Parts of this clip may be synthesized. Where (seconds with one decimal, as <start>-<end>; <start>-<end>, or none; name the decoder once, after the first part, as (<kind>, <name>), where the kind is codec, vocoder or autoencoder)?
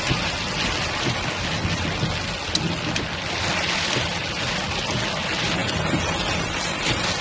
none